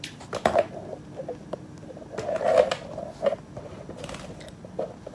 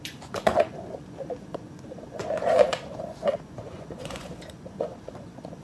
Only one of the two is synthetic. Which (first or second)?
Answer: second